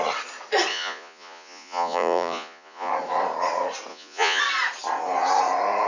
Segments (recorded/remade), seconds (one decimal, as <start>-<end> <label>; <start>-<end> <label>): 0.0-0.7 recorded; 0.7-2.9 remade; 2.9-3.9 recorded; 3.9-4.4 remade; 4.4-5.9 recorded